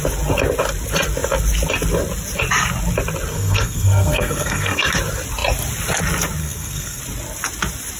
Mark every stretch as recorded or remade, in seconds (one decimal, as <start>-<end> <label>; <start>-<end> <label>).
0.0-3.3 recorded; 3.3-4.9 remade; 4.9-6.4 recorded; 6.4-7.0 remade; 7.0-8.0 recorded